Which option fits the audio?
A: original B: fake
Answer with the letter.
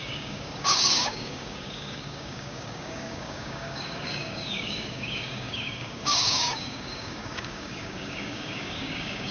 B